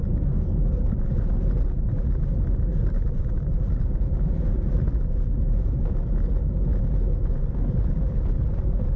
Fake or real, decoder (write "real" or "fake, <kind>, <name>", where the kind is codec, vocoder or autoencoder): real